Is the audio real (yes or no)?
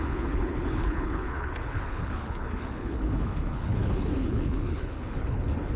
no